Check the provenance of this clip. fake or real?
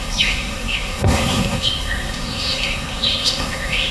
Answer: fake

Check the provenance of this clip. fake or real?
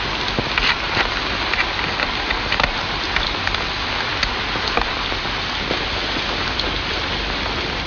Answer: real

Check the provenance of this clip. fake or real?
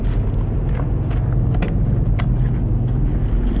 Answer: real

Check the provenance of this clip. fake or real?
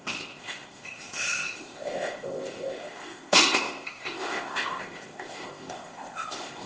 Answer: fake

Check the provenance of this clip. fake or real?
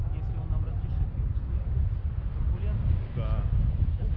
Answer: real